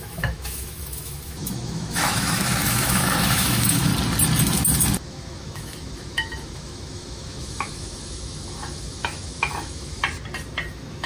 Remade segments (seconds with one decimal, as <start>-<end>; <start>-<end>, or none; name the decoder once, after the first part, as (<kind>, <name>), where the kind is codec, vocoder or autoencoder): 0.0-3.9 (autoencoder, DAC-VAE); 5.1-10.0; 10.7-11.1